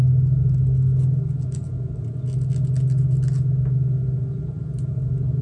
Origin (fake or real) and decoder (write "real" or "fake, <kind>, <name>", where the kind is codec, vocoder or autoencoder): real